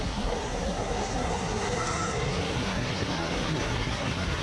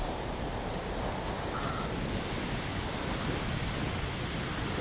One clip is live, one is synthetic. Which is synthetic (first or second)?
first